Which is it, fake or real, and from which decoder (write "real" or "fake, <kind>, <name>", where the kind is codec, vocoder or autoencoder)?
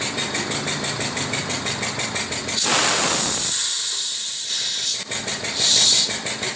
real